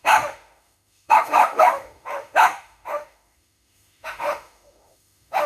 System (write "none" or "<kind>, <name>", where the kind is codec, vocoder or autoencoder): autoencoder, DAC-VAE